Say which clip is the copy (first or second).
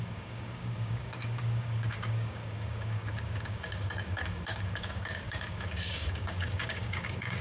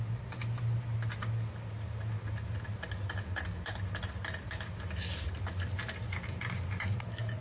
first